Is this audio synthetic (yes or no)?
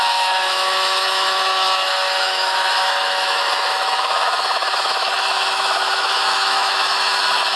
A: yes